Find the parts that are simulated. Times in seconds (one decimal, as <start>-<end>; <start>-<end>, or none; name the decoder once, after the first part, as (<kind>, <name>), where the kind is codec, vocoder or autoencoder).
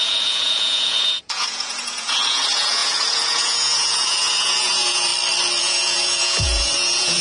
0.0-5.1 (vocoder, Vocos); 5.6-7.2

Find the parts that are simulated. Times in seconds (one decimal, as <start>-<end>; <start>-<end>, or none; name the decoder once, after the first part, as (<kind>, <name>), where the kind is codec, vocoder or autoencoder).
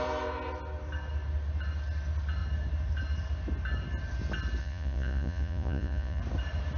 4.6-6.2 (vocoder, Vocos)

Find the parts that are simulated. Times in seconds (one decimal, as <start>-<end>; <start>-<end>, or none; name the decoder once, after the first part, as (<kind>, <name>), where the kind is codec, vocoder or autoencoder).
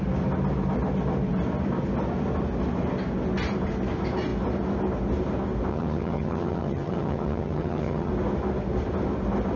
5.7-8.1 (vocoder, HiFi-GAN)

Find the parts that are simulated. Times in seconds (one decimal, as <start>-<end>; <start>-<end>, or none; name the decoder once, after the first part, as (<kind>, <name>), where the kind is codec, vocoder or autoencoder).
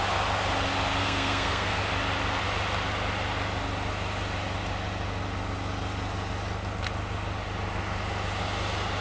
1.0-1.8 (codec, SNAC)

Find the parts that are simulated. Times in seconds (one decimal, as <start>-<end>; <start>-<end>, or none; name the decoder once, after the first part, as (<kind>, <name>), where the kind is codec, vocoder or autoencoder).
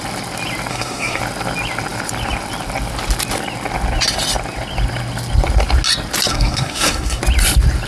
0.7-1.2 (codec, SNAC); 6.3-7.2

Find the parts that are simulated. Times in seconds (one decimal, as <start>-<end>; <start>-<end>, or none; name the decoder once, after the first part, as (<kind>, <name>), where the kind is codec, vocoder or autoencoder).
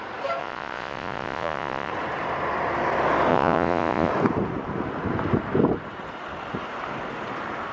0.4-1.9 (vocoder, Vocos); 3.3-4.1